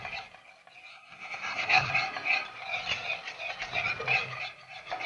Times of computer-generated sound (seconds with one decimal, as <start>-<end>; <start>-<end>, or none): 0.9-1.9